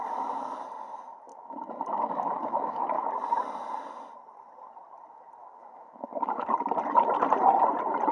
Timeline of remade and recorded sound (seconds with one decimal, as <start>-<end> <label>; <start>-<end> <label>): 0.0-1.3 recorded; 1.3-3.1 remade; 3.1-5.4 recorded; 5.4-6.5 remade; 6.5-8.1 recorded